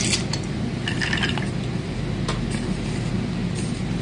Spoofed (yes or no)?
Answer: no